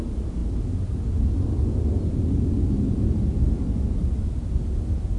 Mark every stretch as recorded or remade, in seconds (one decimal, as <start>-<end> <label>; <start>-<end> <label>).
0.0-5.2 recorded